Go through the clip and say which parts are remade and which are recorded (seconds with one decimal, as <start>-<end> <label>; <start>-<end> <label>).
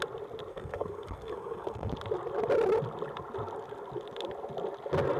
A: 0.0-0.5 recorded; 0.5-1.9 remade; 1.9-5.2 recorded